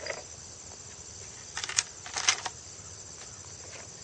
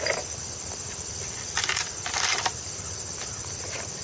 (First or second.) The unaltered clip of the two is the first